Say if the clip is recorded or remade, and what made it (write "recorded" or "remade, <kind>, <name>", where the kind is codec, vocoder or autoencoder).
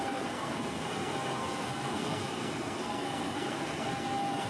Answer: remade, codec, SNAC